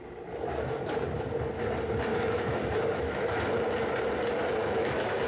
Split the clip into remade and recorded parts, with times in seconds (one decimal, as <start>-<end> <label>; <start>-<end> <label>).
0.0-2.1 recorded; 2.1-3.4 remade; 3.4-4.6 recorded; 4.6-5.3 remade

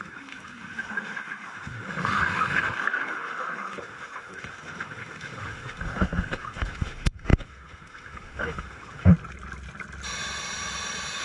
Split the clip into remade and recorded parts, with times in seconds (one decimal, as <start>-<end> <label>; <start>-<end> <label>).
0.0-9.1 remade; 9.1-11.2 recorded

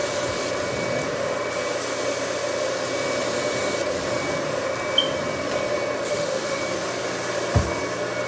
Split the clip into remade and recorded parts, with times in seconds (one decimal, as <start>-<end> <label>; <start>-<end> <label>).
0.0-6.1 recorded; 6.1-6.6 remade; 6.6-8.3 recorded

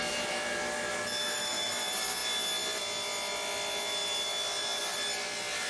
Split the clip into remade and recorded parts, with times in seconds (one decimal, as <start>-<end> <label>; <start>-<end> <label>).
0.0-1.2 recorded; 1.2-1.7 remade; 1.7-5.7 recorded

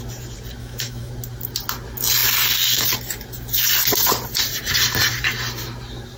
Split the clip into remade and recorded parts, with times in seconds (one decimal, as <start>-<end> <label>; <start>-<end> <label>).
0.0-0.6 recorded; 0.6-1.1 remade; 1.1-6.2 recorded

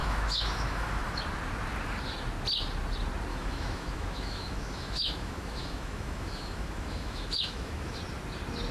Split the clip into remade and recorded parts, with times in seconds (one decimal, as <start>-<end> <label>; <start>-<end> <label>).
0.0-1.2 remade; 1.2-3.3 recorded; 3.3-8.0 remade; 8.0-8.7 recorded